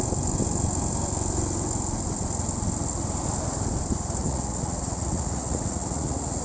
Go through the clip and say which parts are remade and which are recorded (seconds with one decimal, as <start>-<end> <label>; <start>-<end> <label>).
0.0-4.2 recorded; 4.2-6.4 remade